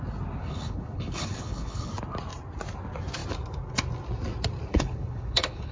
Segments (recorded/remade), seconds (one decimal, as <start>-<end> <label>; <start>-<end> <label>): 0.0-0.4 recorded; 0.4-1.9 remade; 1.9-4.7 recorded; 4.7-5.7 remade